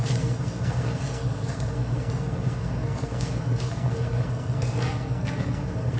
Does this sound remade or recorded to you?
remade